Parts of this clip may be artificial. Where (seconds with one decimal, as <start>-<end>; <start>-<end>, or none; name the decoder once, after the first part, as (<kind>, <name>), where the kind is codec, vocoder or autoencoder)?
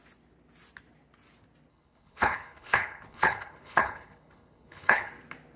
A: 1.7-5.1 (codec, HILCodec)